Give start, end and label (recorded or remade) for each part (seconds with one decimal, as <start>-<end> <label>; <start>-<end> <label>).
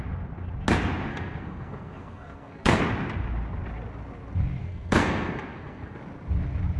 0.0-1.1 recorded; 1.1-2.8 remade; 2.8-4.6 recorded; 4.6-6.0 remade; 6.0-6.8 recorded